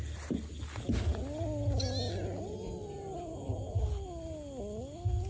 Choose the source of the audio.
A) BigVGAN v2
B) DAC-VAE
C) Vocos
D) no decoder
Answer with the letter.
D